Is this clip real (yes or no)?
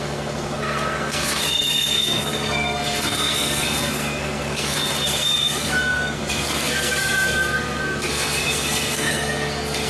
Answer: no